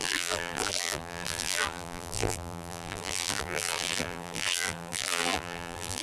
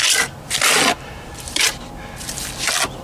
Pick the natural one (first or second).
second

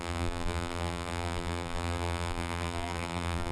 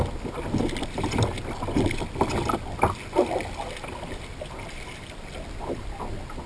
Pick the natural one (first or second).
second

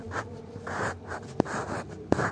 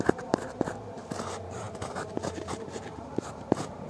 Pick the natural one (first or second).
first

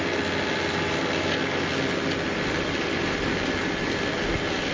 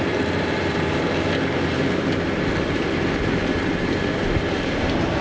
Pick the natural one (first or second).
first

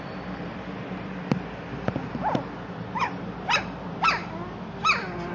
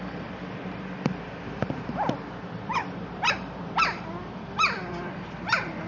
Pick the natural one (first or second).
first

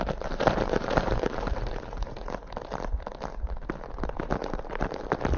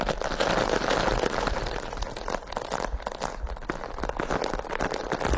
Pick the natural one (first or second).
second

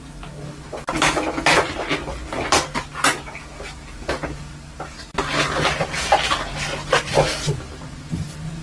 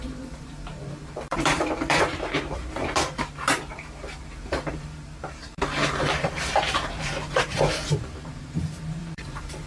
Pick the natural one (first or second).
first